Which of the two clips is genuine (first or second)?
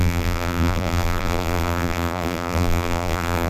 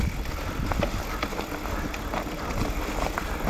second